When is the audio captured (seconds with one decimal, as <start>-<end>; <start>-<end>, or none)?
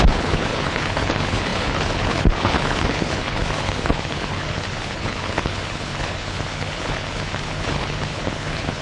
none